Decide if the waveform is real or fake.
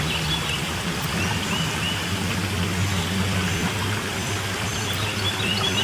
real